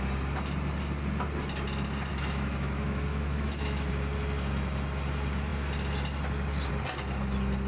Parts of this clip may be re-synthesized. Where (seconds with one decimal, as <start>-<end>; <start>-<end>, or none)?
2.1-3.9